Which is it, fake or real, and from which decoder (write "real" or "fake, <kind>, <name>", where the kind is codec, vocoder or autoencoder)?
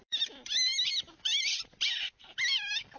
real